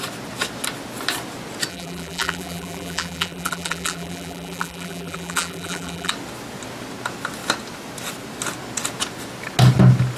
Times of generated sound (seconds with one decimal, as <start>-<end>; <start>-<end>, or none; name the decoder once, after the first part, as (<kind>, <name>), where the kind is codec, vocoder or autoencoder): 1.7-6.1 (vocoder, BigVGAN v2)